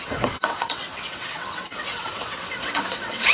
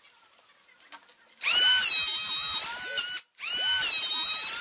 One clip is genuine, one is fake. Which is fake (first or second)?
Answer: first